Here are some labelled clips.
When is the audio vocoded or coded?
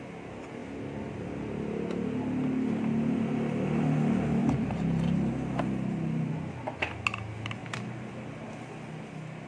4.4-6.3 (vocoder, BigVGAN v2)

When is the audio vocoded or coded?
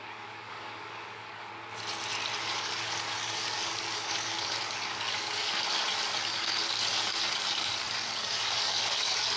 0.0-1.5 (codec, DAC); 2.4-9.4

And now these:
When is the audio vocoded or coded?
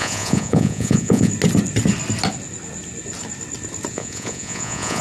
0.0-1.3 (vocoder, Vocos); 3.9-5.0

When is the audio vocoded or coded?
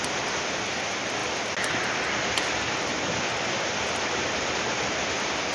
none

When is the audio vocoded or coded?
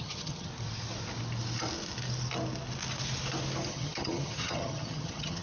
0.0-0.5 (vocoder, HiFi-GAN); 3.7-5.4